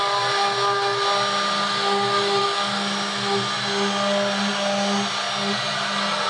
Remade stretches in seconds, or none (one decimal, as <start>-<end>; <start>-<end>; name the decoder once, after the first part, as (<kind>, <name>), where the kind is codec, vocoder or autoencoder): none